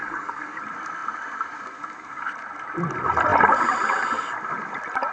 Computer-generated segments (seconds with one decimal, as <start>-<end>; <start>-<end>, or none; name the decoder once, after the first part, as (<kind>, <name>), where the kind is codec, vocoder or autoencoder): 0.0-0.6 (codec, DAC)